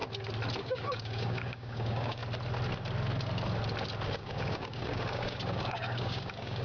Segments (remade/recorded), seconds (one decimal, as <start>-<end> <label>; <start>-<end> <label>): 0.0-0.6 recorded; 0.6-2.2 remade; 2.2-4.1 recorded; 4.1-6.6 remade